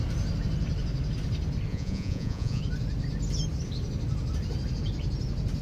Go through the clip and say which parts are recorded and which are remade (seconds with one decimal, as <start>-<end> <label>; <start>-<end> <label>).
0.0-1.7 recorded; 1.7-2.6 remade; 2.6-5.6 recorded